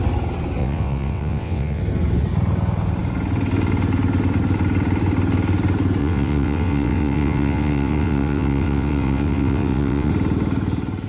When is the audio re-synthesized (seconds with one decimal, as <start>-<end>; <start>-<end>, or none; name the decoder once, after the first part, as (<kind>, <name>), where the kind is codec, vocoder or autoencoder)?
0.6-1.8 (vocoder, WaveNeXt); 6.0-10.1